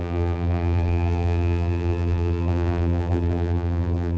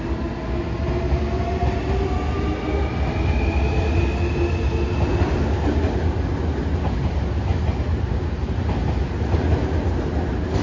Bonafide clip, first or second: second